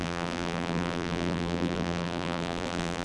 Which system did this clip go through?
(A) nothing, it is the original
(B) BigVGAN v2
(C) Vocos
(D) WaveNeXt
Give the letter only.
B